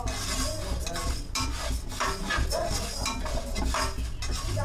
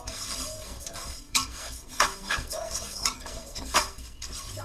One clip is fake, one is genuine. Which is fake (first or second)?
second